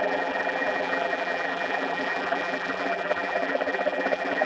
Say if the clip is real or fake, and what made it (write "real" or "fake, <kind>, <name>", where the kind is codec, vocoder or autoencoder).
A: fake, vocoder, BigVGAN v2